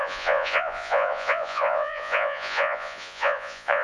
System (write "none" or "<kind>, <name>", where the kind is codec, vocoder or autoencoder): vocoder, Vocos